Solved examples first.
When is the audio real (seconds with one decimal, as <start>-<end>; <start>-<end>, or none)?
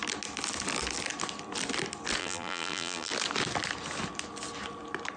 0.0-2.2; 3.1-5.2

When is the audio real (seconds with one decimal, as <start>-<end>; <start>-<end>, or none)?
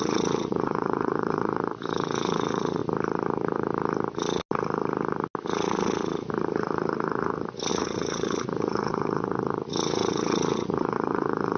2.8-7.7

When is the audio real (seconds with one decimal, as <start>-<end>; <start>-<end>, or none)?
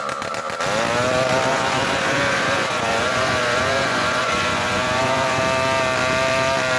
0.0-1.5; 5.4-6.8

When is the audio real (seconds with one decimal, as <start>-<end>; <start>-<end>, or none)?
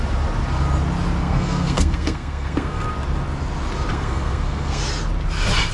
0.0-1.2; 2.9-3.9; 4.8-5.7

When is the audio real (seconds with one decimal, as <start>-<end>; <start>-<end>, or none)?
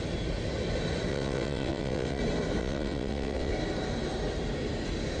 0.0-1.1; 2.2-2.6; 3.5-5.2